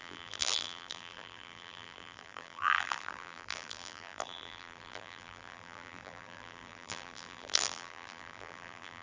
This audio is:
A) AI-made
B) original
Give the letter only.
A